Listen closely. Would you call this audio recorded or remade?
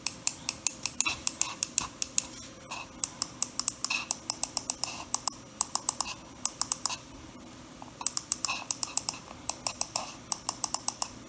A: recorded